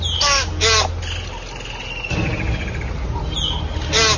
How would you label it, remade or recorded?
recorded